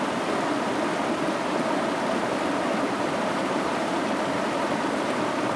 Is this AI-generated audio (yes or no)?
no